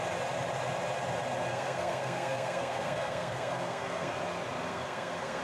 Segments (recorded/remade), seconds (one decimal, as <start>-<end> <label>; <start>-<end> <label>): 0.0-1.5 recorded; 1.5-4.1 remade; 4.1-4.7 recorded; 4.7-5.4 remade